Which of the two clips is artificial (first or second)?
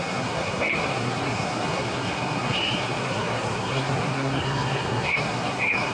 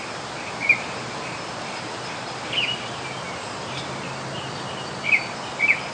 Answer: first